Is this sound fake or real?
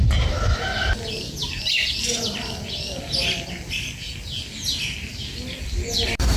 real